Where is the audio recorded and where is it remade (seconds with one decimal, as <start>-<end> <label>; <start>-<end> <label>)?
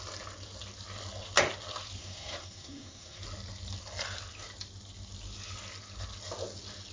0.0-2.0 recorded; 2.0-3.2 remade; 3.2-6.9 recorded